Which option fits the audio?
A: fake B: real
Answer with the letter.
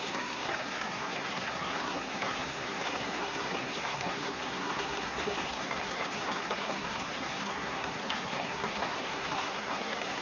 A